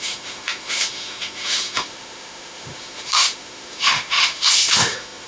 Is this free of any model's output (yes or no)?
no